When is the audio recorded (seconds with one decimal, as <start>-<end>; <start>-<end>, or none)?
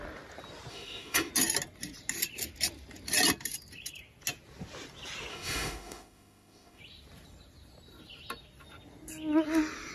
0.0-0.7; 1.3-5.3; 6.8-9.9